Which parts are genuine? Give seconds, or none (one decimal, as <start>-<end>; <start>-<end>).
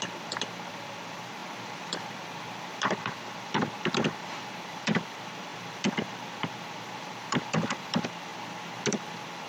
8.3-8.9